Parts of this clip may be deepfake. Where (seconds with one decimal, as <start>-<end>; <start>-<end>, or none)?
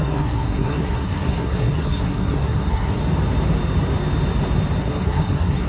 0.0-3.0; 4.8-5.7